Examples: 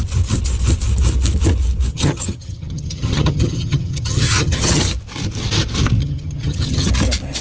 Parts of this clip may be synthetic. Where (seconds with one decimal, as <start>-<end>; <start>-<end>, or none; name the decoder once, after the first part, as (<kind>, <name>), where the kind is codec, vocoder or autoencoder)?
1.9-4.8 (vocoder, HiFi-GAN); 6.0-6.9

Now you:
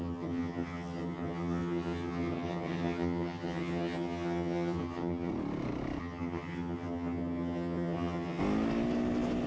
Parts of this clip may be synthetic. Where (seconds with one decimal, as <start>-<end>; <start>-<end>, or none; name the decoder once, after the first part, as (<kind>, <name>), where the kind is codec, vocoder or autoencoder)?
0.0-5.3 (vocoder, HiFi-GAN); 6.0-8.4

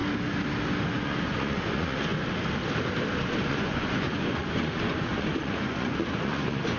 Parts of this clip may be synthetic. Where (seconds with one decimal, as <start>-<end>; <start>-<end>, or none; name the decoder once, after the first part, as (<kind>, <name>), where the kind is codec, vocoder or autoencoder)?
0.9-2.1 (vocoder, Vocos); 3.5-6.8

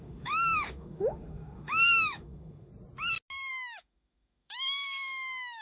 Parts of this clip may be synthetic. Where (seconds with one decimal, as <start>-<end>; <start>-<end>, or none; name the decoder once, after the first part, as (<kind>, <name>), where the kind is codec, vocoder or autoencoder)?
0.0-2.7 (autoencoder, DAC-VAE); 3.5-5.6

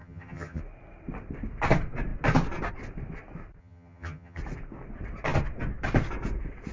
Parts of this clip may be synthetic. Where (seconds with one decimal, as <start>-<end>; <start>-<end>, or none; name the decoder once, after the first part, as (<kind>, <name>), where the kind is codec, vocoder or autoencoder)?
0.0-0.6 (vocoder, HiFi-GAN); 3.6-4.4

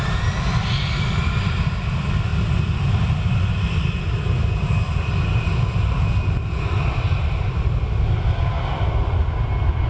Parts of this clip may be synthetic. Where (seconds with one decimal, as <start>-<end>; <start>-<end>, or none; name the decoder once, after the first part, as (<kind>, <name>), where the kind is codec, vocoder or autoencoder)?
none

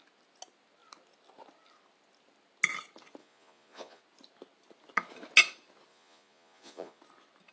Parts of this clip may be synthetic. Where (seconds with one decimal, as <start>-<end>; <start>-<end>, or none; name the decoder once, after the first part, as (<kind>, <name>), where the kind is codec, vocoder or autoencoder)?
3.2-4.0 (vocoder, Vocos); 5.9-7.0

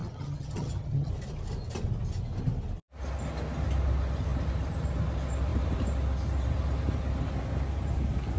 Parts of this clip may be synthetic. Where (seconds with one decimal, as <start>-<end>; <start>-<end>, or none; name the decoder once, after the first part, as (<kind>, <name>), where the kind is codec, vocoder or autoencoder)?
0.0-1.1 (vocoder, HiFi-GAN)